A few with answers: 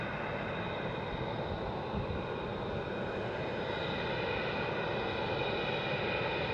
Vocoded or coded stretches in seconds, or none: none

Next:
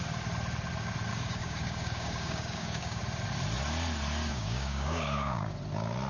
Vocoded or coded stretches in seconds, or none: 1.1-3.0 (codec, DAC); 4.3-5.5

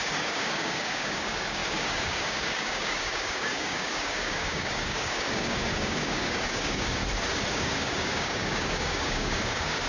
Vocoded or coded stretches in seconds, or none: 0.0-7.0 (codec, DAC); 7.5-9.9